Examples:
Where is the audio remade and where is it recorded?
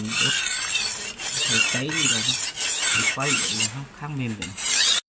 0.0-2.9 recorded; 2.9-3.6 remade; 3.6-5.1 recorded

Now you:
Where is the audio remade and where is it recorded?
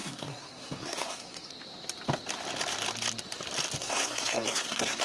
0.0-1.5 remade; 1.5-3.8 recorded; 3.8-5.0 remade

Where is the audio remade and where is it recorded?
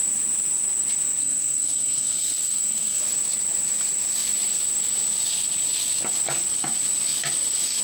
0.0-1.2 recorded; 1.2-3.0 remade; 3.0-7.8 recorded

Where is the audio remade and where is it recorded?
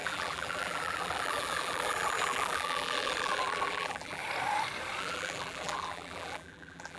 0.0-4.2 remade; 4.2-5.0 recorded; 5.0-7.0 remade